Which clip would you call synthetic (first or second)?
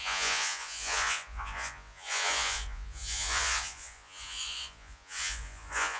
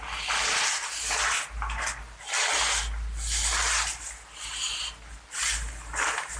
first